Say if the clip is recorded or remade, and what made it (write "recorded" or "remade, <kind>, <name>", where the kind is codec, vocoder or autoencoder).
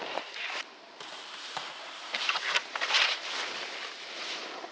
remade, vocoder, BigVGAN v2